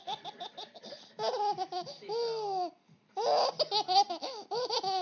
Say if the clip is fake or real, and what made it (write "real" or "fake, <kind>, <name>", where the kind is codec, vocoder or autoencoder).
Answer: real